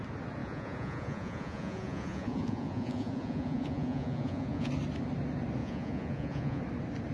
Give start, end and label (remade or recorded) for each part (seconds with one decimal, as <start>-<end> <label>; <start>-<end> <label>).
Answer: 0.0-0.4 recorded; 0.4-4.7 remade; 4.7-5.6 recorded; 5.6-6.6 remade; 6.6-7.1 recorded